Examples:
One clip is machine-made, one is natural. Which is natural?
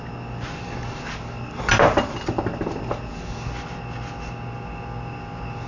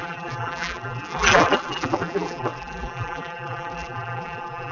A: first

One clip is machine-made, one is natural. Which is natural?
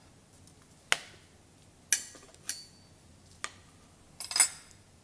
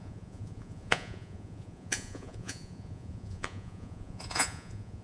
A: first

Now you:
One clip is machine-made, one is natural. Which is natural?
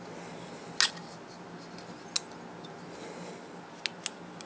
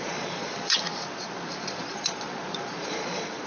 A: first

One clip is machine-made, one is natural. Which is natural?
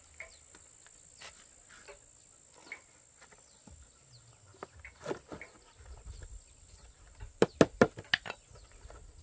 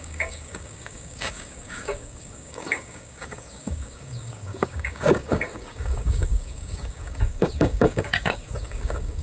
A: first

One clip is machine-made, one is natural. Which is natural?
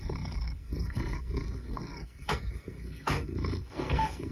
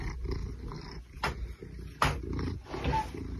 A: second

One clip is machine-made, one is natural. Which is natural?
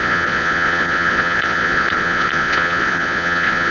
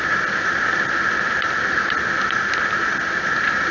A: second